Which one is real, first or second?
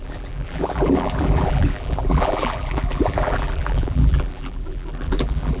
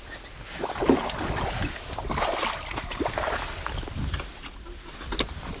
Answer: second